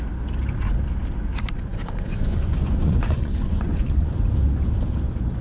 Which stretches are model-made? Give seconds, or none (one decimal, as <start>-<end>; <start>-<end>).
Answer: 1.7-4.1